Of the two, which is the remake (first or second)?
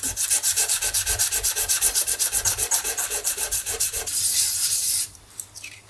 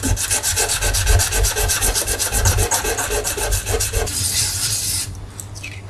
first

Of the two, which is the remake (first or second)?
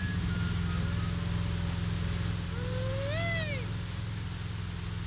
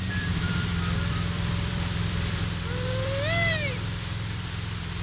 second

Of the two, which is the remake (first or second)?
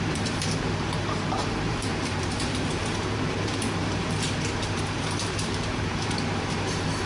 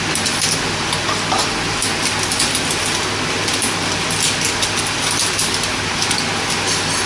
first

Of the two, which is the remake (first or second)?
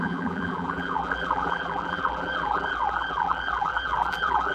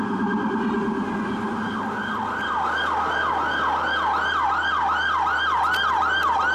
first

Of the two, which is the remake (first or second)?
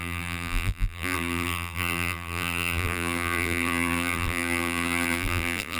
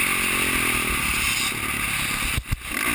first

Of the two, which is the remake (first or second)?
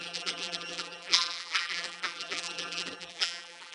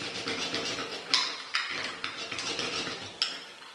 first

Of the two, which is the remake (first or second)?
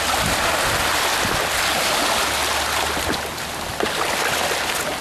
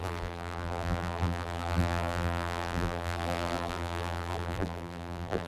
second